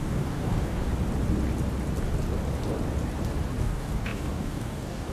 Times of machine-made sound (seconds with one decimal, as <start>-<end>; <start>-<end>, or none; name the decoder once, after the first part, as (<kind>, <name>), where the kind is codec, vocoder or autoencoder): 0.0-0.9 (codec, DAC); 3.6-5.1